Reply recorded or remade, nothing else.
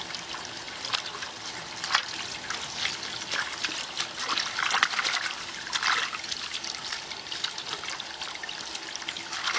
recorded